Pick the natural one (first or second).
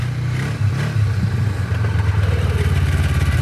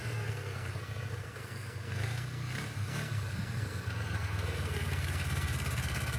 first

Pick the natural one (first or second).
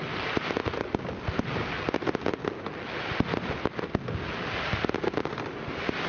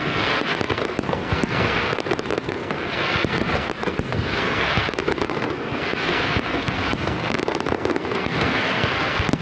first